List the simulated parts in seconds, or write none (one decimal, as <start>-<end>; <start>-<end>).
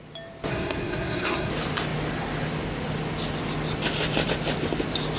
0.5-1.5